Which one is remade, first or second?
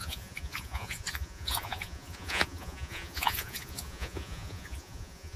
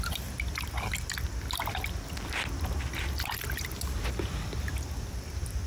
first